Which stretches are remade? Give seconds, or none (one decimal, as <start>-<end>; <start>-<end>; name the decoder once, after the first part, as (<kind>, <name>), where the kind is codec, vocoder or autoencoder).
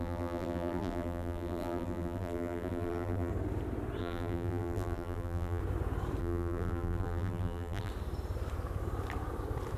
0.0-3.3 (vocoder, BigVGAN v2); 4.0-5.6; 6.2-7.9